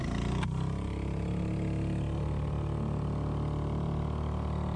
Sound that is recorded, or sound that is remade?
recorded